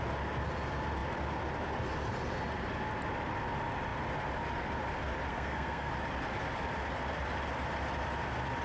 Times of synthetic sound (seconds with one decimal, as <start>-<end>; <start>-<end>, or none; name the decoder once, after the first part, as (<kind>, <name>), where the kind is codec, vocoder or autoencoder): 5.3-5.9 (codec, SNAC)